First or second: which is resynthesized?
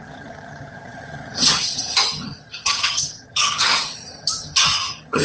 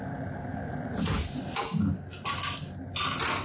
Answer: first